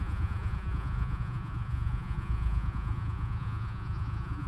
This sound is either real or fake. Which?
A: fake